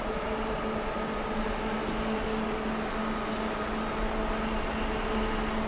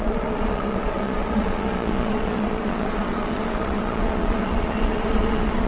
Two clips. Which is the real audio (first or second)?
first